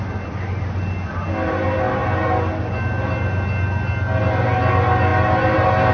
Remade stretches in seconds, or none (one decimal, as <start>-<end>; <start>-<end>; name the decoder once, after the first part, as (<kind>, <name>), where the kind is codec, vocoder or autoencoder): none